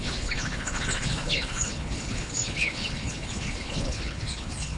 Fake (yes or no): yes